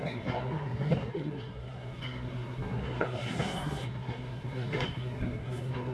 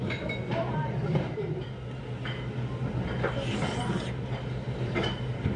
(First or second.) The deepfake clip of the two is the first